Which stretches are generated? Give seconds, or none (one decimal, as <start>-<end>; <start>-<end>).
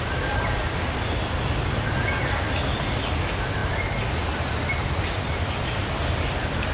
none